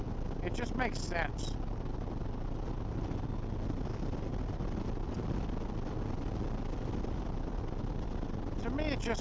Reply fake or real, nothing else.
real